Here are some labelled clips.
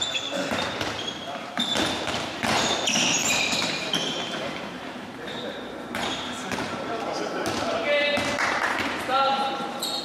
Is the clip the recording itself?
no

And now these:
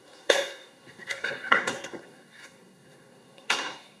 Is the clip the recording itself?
no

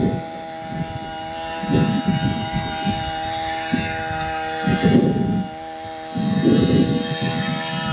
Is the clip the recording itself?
yes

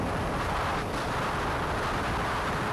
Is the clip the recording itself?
yes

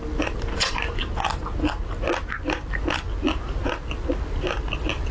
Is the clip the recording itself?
yes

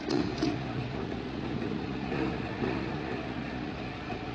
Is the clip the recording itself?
no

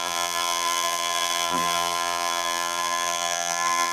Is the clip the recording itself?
no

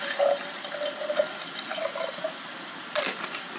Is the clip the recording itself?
yes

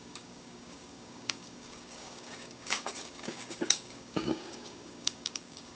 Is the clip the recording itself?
no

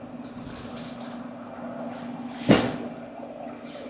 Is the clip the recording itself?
yes